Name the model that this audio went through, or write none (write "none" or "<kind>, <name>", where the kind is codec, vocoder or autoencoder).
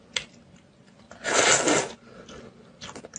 none